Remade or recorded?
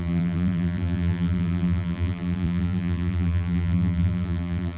remade